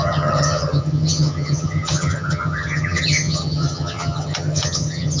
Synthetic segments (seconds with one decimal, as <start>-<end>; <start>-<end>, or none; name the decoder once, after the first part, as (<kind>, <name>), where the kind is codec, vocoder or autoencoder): 0.0-5.2 (vocoder, HiFi-GAN)